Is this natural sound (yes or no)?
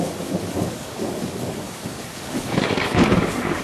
no